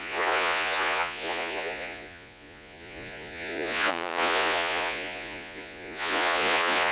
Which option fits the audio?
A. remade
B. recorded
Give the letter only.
A